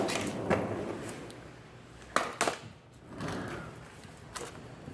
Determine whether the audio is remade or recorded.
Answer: recorded